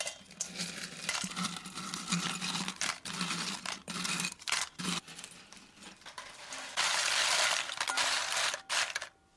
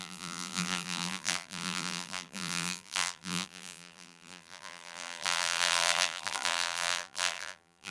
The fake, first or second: second